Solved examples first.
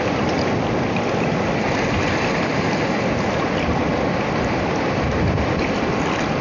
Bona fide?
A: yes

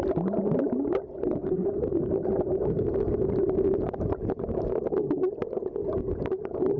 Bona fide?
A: yes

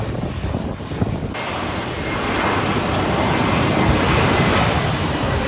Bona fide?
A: yes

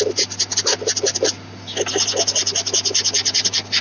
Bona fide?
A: yes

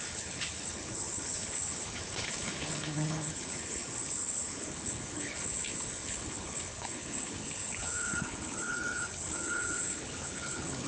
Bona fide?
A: no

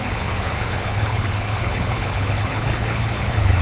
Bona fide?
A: no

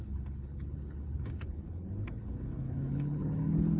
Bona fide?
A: no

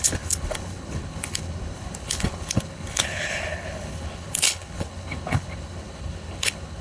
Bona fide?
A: no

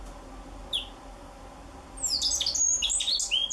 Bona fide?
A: yes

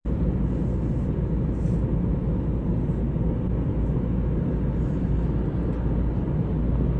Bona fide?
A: yes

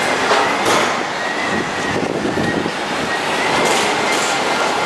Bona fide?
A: yes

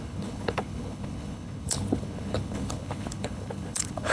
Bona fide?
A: no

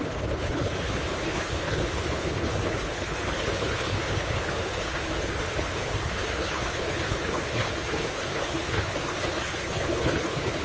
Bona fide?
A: no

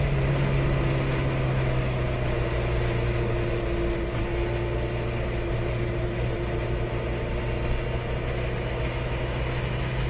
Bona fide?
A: yes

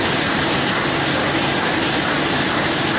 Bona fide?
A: yes